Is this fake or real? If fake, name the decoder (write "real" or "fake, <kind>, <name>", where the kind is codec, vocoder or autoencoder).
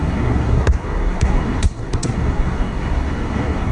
fake, codec, SNAC